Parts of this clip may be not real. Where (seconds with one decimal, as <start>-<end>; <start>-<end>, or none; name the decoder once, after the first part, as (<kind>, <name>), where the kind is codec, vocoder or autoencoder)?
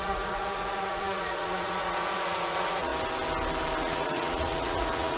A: 0.0-2.9 (vocoder, Vocos); 3.8-5.2